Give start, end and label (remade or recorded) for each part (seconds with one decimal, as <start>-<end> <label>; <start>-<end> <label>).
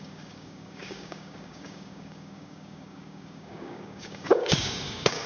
0.0-5.3 remade